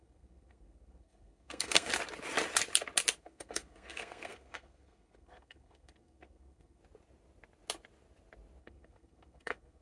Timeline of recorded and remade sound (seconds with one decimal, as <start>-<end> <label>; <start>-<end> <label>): 0.0-1.9 remade; 1.9-3.2 recorded; 3.2-6.8 remade; 6.8-8.6 recorded; 8.6-9.8 remade